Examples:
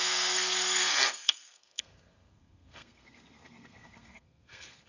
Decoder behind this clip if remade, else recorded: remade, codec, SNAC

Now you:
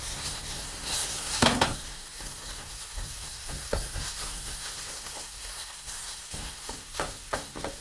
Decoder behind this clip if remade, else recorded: remade, codec, SNAC